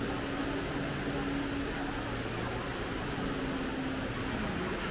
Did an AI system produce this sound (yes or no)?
no